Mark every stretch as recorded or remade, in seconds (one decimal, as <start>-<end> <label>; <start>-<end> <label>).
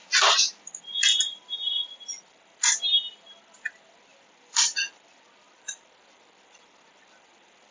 0.0-4.1 recorded; 4.1-5.6 remade; 5.6-7.7 recorded